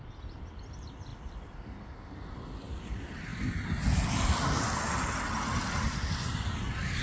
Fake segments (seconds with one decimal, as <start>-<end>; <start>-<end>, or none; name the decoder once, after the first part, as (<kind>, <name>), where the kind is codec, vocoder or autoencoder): none